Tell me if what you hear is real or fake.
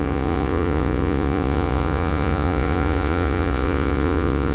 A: fake